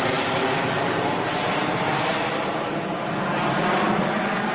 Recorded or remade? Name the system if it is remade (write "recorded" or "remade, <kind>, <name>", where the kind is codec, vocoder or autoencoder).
recorded